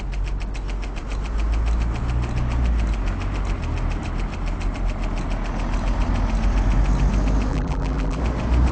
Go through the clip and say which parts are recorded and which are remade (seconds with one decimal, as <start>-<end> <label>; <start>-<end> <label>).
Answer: 0.0-7.5 recorded; 7.5-8.2 remade; 8.2-8.7 recorded